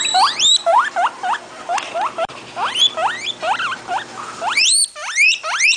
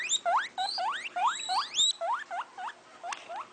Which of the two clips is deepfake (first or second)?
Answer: first